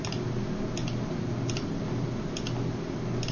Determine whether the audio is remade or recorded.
recorded